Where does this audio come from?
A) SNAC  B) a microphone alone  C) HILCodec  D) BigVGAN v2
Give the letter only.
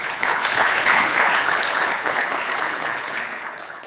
C